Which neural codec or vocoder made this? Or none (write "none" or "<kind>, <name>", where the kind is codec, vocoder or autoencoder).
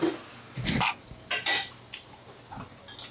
none